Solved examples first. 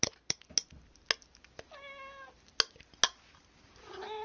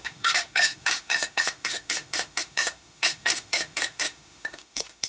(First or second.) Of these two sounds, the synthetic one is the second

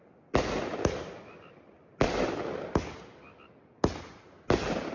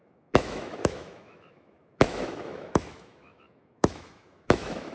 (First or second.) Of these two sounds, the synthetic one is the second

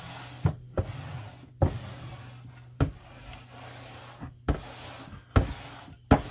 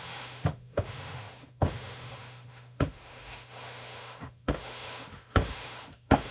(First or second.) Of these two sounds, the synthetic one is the second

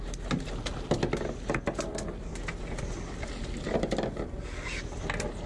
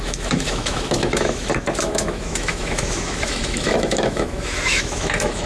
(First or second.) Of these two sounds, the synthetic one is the second